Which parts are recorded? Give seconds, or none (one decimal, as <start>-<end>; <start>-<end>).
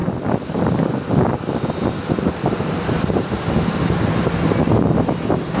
0.0-5.6